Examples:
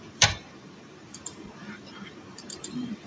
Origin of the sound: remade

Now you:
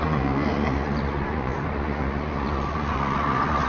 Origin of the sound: remade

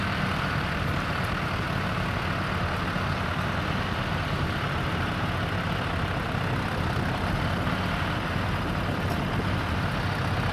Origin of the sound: recorded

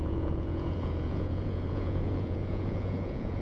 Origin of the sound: remade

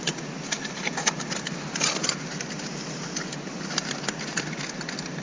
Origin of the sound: recorded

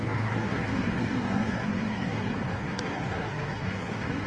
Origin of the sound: remade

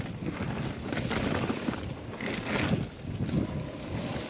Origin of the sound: recorded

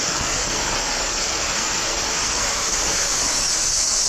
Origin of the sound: remade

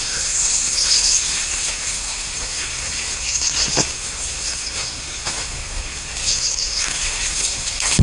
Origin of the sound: remade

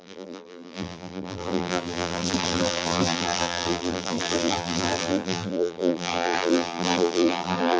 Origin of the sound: remade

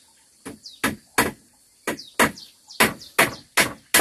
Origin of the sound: recorded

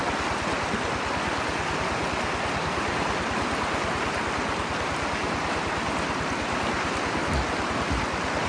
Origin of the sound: recorded